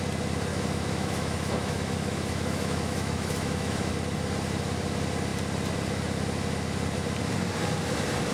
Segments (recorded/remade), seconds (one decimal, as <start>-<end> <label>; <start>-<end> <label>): 0.0-0.5 recorded; 0.5-3.9 remade; 3.9-8.3 recorded